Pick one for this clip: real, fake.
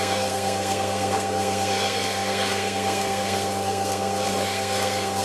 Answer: fake